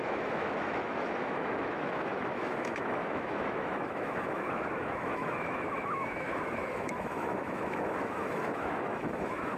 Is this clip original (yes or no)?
no